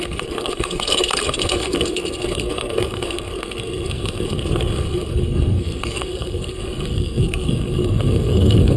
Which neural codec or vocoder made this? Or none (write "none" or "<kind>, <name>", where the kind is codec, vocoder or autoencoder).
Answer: codec, SNAC